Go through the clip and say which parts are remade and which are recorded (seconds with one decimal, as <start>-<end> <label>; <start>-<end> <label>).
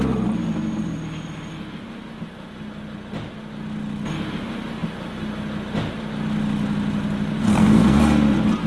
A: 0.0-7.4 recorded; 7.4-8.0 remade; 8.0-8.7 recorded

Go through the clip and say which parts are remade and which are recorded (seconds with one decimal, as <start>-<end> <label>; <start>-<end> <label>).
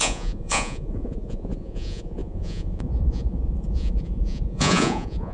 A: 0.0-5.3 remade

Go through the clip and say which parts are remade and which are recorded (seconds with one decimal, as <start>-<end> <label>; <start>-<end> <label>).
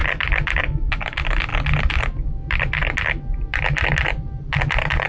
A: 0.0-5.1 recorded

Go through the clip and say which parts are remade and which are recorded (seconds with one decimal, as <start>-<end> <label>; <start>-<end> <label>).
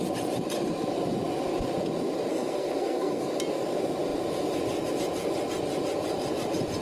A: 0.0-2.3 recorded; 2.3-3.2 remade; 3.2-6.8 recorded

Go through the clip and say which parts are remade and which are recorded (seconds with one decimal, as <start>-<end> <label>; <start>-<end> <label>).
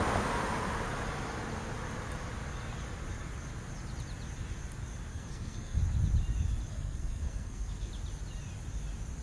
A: 0.0-5.1 recorded; 5.1-5.8 remade; 5.8-6.7 recorded; 6.7-7.9 remade; 7.9-9.2 recorded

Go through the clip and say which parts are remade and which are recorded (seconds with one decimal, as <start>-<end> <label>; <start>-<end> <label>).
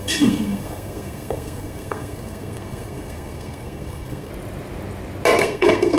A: 0.0-4.3 remade; 4.3-5.4 recorded; 5.4-6.0 remade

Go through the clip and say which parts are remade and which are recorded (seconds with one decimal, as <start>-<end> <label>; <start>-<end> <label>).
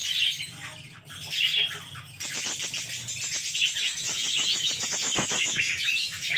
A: 0.0-3.8 recorded; 3.8-6.4 remade